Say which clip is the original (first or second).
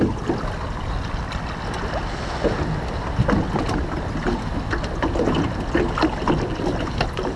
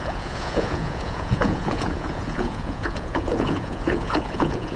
first